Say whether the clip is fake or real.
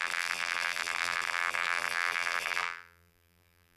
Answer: fake